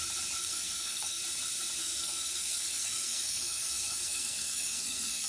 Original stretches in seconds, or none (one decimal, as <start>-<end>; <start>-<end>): 0.0-0.4; 1.2-1.8